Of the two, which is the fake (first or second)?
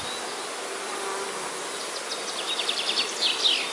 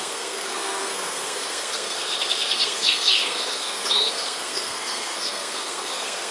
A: second